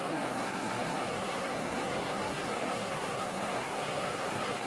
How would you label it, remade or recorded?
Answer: remade